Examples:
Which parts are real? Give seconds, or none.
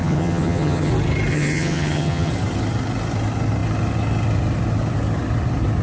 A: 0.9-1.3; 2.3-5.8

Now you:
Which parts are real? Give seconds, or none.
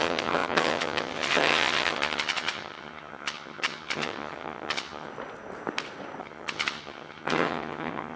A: 5.1-6.2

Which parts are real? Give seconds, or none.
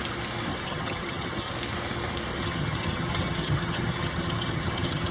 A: 0.0-0.5; 1.5-2.3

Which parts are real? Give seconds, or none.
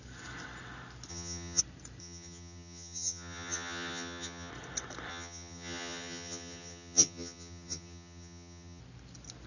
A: 0.0-1.1; 1.6-2.0; 4.5-5.1; 8.8-9.5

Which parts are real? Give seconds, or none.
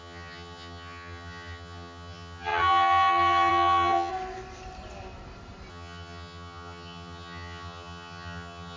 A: 4.1-5.7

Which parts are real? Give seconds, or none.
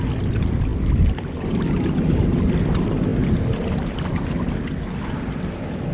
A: 0.0-5.9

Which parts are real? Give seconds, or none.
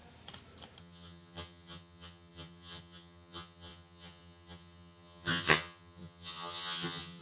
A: 0.0-0.8